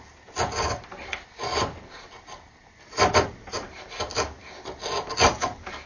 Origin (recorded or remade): recorded